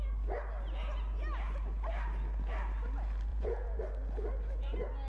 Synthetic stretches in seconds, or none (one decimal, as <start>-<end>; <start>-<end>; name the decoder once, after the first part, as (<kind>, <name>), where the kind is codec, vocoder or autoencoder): 3.3-3.8 (vocoder, Vocos)